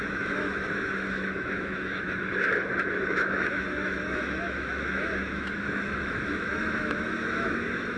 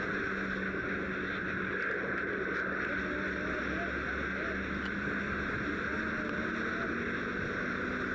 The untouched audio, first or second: second